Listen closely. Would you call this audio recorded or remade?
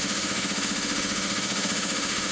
remade